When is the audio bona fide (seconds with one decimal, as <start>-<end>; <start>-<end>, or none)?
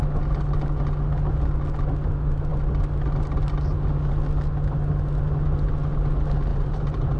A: 0.0-6.5